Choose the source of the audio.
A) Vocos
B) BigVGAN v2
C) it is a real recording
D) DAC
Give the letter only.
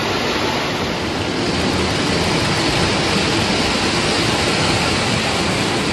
C